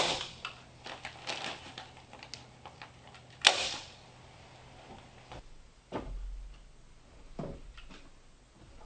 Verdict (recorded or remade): recorded